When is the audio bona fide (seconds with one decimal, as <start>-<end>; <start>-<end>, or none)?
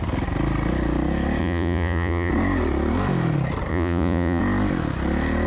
0.0-1.4; 2.3-3.7; 4.4-5.5